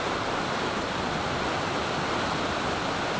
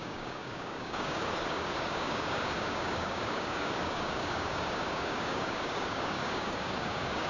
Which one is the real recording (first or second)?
first